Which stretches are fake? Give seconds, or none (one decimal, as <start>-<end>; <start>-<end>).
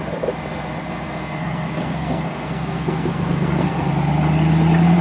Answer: 1.2-3.9